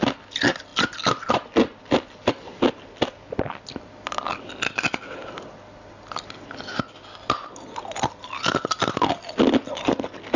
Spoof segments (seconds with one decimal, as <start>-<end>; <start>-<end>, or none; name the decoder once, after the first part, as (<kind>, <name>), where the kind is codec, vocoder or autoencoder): none